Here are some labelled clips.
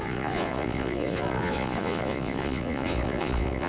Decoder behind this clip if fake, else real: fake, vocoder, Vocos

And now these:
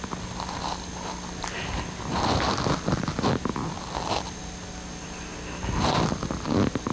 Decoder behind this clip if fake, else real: real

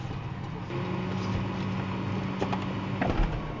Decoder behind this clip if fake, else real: real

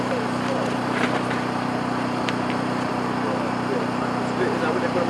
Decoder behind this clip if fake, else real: fake, vocoder, BigVGAN v2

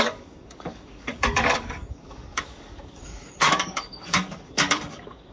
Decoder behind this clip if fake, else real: fake, codec, DAC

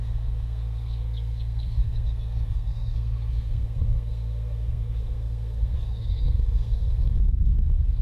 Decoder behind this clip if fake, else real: fake, codec, SNAC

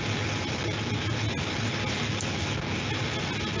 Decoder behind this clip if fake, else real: real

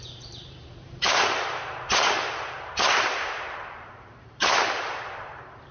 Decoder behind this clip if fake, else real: fake, vocoder, BigVGAN v2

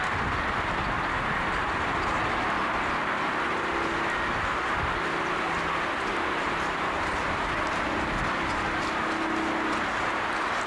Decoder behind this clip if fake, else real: real